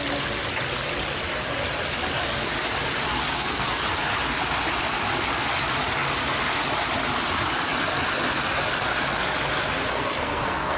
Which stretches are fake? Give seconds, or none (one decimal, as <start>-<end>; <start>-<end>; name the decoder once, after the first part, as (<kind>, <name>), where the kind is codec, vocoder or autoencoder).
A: 3.2-3.8 (codec, SNAC); 9.9-10.8